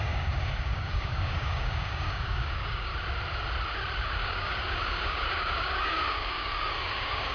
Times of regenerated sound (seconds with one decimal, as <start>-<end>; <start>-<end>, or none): 0.0-2.9; 4.0-7.3